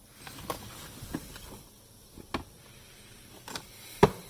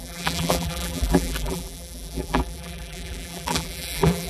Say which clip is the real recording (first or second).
first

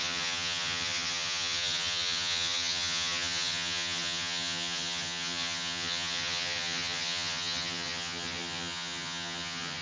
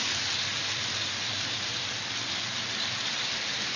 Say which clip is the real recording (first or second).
second